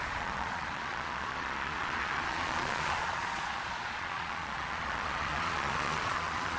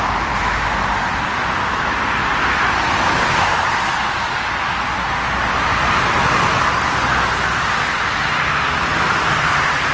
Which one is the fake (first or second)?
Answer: first